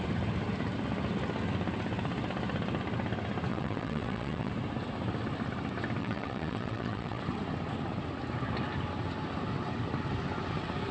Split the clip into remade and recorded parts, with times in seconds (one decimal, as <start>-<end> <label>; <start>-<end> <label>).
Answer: 0.0-3.5 recorded; 3.5-4.5 remade; 4.5-6.0 recorded; 6.0-7.2 remade; 7.2-10.9 recorded

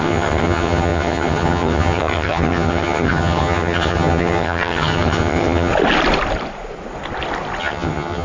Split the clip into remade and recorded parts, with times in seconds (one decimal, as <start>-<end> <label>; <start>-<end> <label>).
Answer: 0.0-5.7 remade; 5.7-7.6 recorded; 7.6-8.2 remade